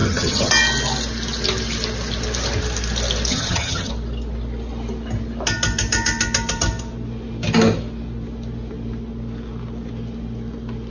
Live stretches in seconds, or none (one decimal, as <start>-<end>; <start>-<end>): 0.5-3.3; 3.9-10.9

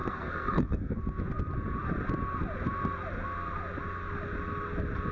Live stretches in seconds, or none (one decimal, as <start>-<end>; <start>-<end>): 1.0-5.1

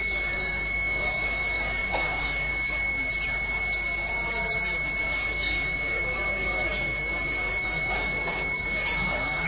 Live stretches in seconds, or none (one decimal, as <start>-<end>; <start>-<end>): 3.1-5.0

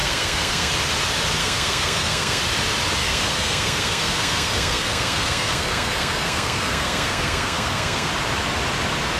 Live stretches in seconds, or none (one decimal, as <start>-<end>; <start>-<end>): 0.7-1.4; 2.4-3.0; 8.1-9.2

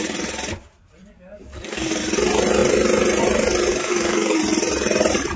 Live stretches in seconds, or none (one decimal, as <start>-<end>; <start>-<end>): 0.0-1.0; 2.0-3.7; 4.4-5.4

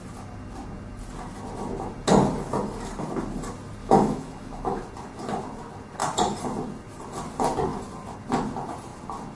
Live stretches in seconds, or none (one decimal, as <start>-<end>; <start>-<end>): 0.0-3.8; 4.8-9.4

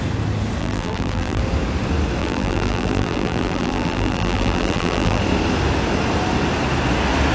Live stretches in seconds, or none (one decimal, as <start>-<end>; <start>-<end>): 0.0-0.6; 1.4-2.2; 5.2-7.3